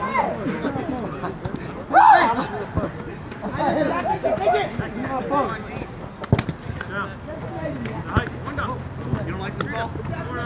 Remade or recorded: recorded